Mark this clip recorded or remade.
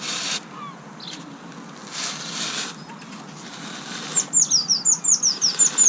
recorded